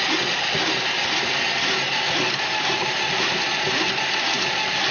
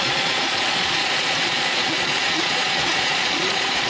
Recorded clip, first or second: first